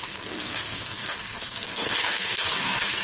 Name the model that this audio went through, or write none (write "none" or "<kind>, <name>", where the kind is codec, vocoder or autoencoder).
codec, SNAC